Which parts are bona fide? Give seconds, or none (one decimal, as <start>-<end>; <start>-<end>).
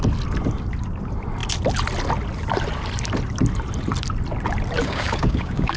0.0-4.8